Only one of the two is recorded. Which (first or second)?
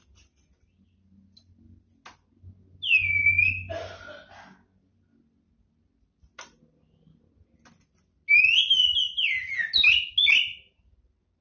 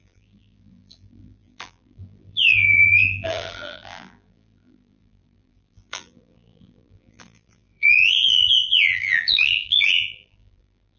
first